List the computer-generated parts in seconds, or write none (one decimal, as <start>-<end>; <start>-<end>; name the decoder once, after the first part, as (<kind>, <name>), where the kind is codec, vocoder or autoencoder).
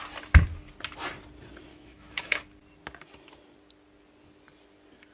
1.7-2.4 (autoencoder, DAC-VAE)